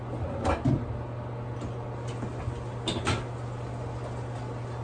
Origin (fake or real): real